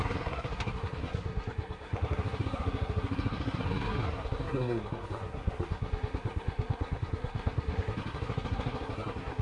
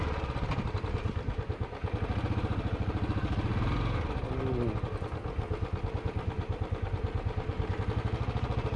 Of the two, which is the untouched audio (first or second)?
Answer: second